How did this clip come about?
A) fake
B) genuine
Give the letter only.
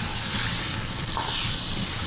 B